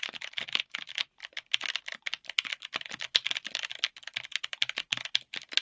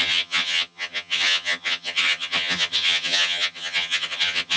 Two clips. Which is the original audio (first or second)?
first